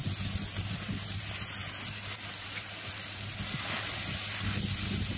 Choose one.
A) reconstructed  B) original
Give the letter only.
B